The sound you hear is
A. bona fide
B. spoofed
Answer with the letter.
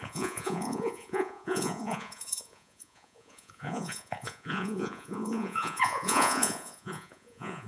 B